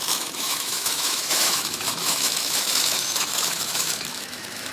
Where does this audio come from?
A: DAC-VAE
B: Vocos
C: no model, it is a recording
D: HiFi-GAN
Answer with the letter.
A